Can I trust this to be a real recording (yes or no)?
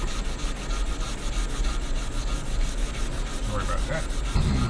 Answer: yes